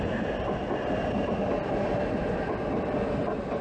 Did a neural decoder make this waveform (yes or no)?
no